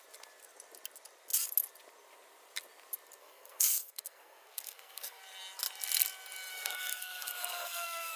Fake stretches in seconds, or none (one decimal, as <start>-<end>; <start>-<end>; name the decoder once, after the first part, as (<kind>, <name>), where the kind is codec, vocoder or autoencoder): 3.2-5.2 (codec, SNAC); 6.5-8.2